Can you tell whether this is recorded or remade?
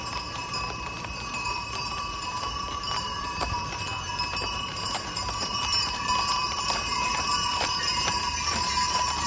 remade